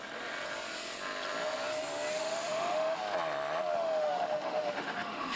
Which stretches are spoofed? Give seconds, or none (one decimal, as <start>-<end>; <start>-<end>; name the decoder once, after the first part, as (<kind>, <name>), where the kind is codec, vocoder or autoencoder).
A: 2.1-3.0 (autoencoder, DAC-VAE); 3.7-5.4